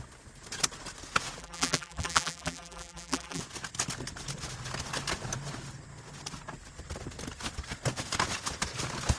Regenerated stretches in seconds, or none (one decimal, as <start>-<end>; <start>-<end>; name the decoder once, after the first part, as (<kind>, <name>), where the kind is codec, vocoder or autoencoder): 1.4-3.4 (vocoder, BigVGAN v2)